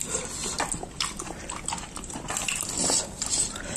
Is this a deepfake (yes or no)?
yes